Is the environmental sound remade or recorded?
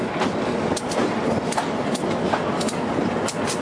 recorded